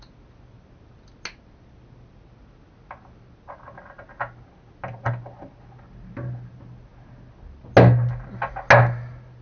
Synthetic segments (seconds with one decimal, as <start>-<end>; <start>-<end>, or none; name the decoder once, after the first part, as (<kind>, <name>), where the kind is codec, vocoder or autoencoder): none